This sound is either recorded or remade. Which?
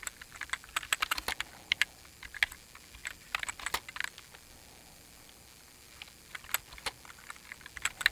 recorded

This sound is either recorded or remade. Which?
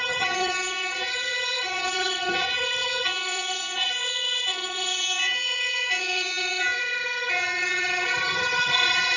remade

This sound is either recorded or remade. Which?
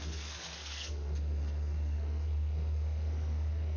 remade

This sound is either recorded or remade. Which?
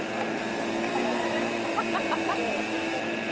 recorded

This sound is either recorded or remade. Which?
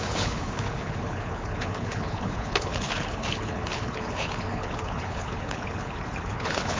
remade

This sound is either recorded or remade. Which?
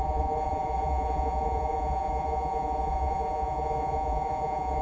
remade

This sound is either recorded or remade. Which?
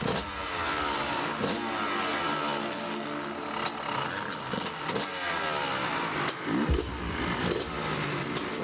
recorded